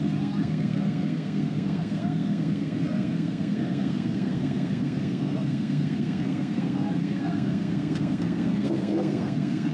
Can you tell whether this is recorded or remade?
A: remade